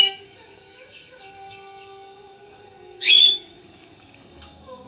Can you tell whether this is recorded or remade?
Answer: remade